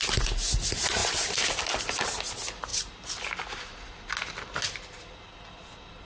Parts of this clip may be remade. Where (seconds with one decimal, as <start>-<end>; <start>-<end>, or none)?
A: none